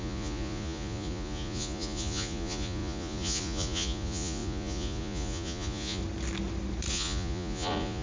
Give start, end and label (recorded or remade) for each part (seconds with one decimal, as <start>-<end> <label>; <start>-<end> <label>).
0.0-6.0 remade; 6.0-6.9 recorded; 6.9-8.0 remade